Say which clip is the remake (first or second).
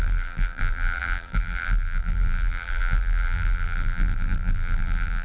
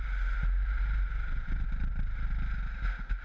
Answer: first